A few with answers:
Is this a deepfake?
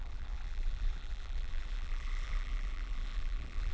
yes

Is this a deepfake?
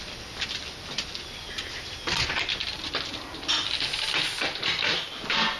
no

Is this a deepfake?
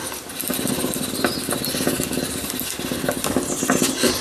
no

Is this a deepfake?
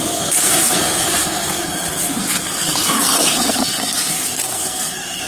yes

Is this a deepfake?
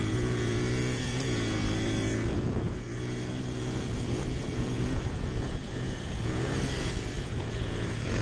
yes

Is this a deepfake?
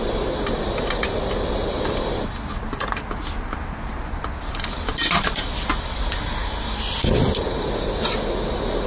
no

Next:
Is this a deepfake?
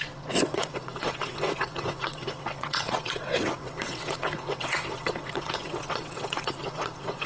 yes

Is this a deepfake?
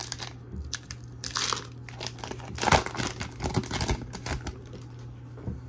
no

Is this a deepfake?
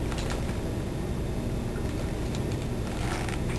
no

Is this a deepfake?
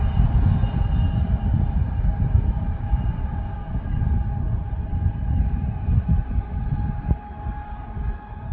no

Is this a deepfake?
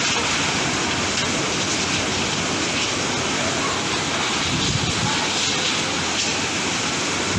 no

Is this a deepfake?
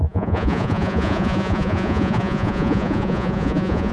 yes